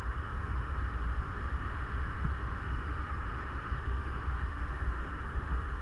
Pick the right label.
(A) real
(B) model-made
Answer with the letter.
B